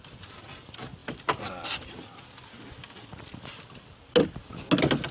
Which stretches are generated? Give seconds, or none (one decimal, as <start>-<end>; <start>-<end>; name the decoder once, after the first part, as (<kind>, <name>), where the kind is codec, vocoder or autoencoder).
none